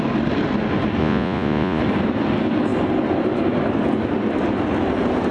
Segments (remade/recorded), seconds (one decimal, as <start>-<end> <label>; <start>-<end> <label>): 0.0-1.0 recorded; 1.0-1.8 remade; 1.8-5.3 recorded